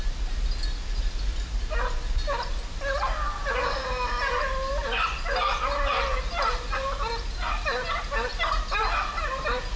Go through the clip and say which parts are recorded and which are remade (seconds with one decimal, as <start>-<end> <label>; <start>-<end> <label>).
0.0-9.8 recorded